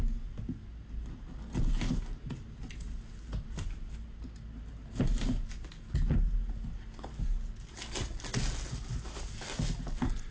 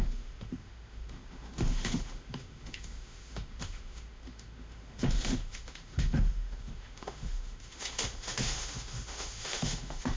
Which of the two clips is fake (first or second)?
second